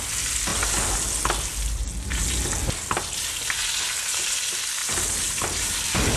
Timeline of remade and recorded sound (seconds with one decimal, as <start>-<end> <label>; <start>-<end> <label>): 0.0-4.8 recorded; 4.8-5.7 remade; 5.7-6.2 recorded